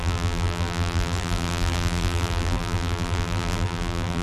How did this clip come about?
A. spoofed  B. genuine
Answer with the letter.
A